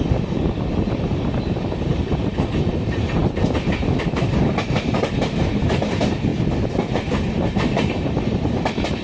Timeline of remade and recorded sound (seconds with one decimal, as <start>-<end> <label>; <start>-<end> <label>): 0.0-3.2 remade; 3.2-4.6 recorded; 4.6-6.3 remade; 6.3-6.9 recorded; 6.9-9.0 remade